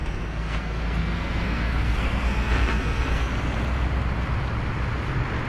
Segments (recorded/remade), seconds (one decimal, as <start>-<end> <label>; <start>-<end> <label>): 0.0-3.3 remade; 3.3-5.5 recorded